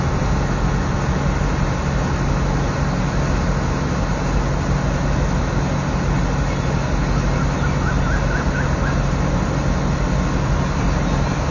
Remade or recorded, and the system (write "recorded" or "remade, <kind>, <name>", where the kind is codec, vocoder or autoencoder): recorded